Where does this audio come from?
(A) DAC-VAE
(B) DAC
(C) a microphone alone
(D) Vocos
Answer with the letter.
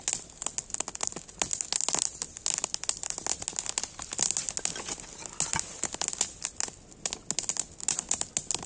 C